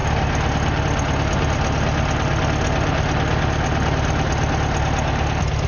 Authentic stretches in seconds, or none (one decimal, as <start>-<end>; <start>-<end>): 0.0-5.7